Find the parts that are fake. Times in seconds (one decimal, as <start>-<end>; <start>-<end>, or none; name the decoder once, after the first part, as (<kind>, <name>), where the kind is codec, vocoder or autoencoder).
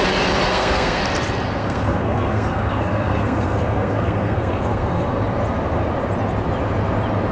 0.5-1.0 (codec, SNAC); 1.6-5.2